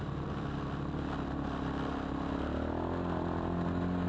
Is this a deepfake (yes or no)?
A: no